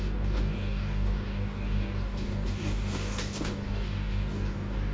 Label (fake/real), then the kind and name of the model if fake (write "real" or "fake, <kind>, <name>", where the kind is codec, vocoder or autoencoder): fake, codec, DAC